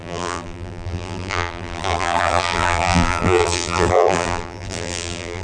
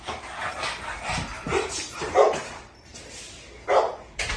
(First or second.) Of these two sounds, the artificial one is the first